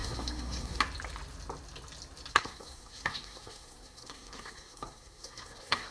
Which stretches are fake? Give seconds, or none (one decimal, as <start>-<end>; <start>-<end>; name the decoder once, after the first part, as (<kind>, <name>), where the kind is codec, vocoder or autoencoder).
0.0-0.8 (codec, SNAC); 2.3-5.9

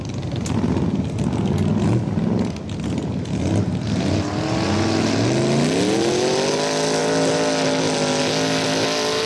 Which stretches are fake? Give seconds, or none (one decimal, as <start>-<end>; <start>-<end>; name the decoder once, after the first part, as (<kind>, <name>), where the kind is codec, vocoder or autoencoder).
none

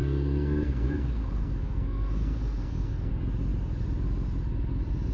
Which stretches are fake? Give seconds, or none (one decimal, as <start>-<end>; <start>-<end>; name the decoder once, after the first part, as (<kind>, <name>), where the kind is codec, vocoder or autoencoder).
0.0-3.1 (codec, SNAC)

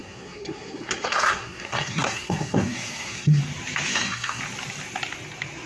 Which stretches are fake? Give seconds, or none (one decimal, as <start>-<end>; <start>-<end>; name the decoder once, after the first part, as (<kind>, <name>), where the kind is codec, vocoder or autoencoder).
0.0-3.4 (codec, SNAC); 3.9-4.4

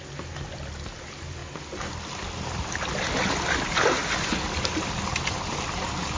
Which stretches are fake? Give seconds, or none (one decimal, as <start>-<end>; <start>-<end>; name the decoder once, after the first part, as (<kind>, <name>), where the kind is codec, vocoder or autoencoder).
none

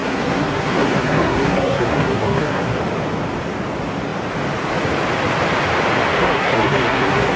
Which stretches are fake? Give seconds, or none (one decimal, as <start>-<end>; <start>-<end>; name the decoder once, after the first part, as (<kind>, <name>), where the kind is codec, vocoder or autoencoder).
0.0-2.8 (codec, SNAC); 6.2-7.4

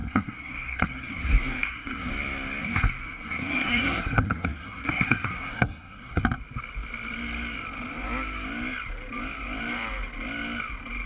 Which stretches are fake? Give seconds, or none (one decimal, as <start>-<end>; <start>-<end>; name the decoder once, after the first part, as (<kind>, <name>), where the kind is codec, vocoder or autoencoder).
0.0-2.1 (codec, SNAC); 2.6-6.2